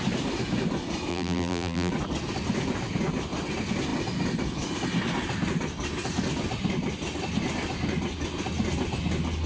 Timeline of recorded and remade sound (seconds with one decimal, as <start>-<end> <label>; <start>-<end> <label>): 0.0-1.1 recorded; 1.1-1.9 remade; 1.9-9.5 recorded